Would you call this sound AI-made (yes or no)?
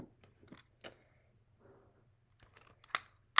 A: no